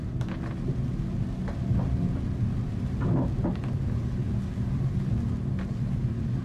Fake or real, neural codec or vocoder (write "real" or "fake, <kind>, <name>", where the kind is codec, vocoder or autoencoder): real